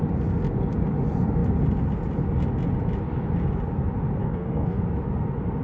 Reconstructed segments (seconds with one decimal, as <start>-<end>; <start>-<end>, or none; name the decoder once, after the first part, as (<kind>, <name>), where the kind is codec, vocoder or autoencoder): 4.2-4.8 (codec, DAC)